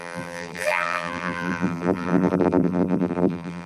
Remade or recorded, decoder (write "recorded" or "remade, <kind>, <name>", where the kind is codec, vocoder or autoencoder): remade, vocoder, BigVGAN v2